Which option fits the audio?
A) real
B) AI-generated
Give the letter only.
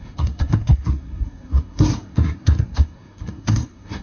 B